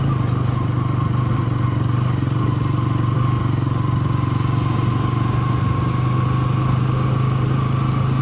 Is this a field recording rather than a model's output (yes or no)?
yes